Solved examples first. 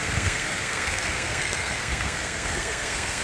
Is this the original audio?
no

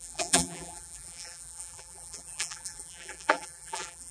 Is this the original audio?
no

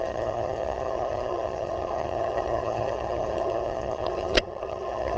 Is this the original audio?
no